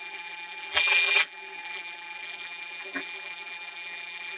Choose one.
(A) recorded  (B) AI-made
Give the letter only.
B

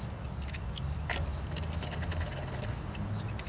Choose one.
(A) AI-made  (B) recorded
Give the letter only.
B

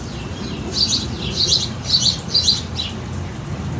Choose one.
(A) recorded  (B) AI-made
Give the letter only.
A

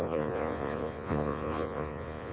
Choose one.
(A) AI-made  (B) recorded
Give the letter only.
A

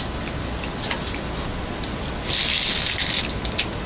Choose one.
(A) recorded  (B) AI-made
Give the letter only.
A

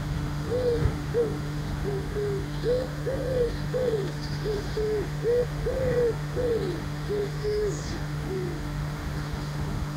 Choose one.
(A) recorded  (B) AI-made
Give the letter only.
B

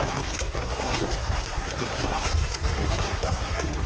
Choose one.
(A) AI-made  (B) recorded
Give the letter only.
A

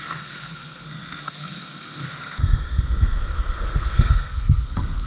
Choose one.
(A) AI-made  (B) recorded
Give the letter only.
A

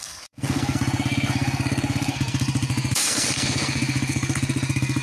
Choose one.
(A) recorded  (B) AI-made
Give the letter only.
B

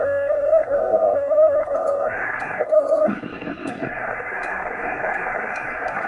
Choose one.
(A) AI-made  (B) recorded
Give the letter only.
A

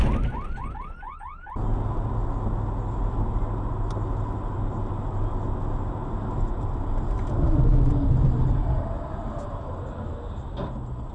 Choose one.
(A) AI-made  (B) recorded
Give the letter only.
B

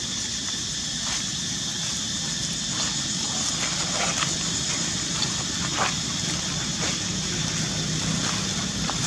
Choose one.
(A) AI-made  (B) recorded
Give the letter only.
B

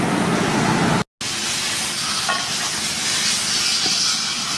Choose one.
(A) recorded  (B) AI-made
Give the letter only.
A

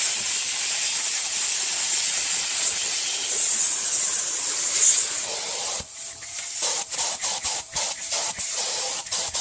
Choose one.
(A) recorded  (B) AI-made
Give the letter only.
A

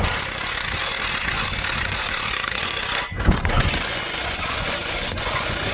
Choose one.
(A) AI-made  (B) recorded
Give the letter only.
A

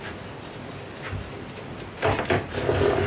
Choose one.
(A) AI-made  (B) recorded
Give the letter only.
B